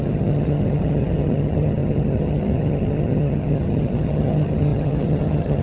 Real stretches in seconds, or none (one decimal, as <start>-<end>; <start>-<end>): none